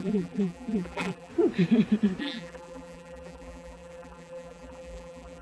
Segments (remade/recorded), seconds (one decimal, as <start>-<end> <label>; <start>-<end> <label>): 0.0-1.3 remade; 1.3-2.2 recorded; 2.2-5.4 remade

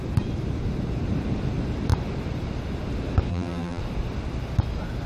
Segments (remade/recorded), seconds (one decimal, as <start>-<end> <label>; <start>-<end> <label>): 0.0-3.3 recorded; 3.3-3.8 remade; 3.8-5.1 recorded

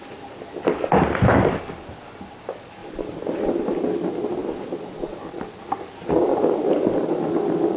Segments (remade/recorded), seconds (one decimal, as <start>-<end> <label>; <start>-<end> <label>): 0.0-2.8 recorded; 2.8-3.8 remade; 3.8-4.4 recorded; 4.4-5.6 remade; 5.6-6.3 recorded; 6.3-7.2 remade; 7.2-7.8 recorded

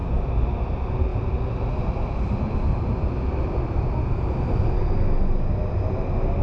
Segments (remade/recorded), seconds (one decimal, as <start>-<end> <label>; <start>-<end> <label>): 0.0-1.1 recorded; 1.1-4.9 remade; 4.9-6.4 recorded